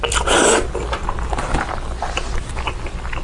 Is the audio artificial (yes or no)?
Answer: no